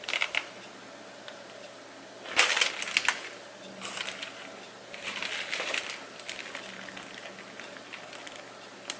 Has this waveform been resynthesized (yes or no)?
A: no